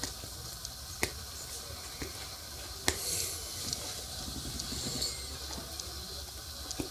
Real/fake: real